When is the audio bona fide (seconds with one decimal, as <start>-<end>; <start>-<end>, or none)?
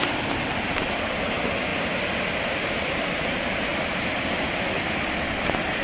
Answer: 1.7-2.4; 3.7-5.3